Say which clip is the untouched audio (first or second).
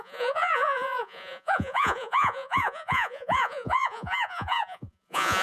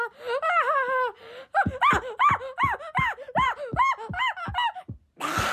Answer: second